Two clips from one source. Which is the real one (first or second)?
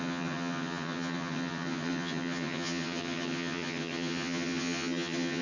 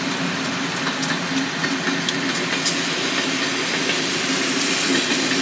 second